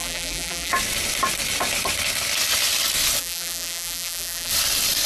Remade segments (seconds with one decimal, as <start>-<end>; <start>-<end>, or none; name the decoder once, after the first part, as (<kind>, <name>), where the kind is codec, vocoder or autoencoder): 0.0-0.7 (vocoder, BigVGAN v2); 3.2-4.5